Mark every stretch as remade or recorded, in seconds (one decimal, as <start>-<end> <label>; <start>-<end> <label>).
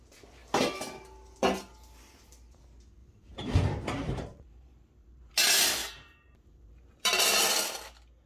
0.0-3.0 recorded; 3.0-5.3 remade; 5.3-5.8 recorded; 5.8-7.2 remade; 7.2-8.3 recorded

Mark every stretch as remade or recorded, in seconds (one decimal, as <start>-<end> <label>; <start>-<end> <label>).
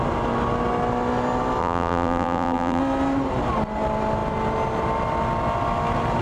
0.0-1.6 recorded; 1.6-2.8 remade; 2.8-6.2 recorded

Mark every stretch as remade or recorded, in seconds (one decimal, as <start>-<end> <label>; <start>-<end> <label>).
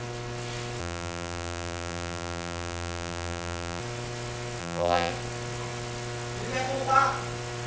0.0-0.8 recorded; 0.8-3.8 remade; 3.8-4.6 recorded; 4.6-5.1 remade; 5.1-7.7 recorded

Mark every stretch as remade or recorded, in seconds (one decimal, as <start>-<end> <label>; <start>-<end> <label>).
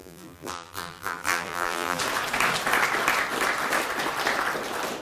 0.0-2.0 remade; 2.0-5.0 recorded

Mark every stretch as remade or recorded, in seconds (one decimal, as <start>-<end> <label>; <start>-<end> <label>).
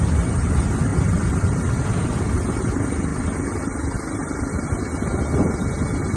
0.0-6.2 recorded